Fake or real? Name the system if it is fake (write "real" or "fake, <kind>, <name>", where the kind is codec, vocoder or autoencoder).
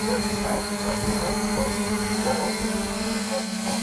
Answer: fake, codec, SNAC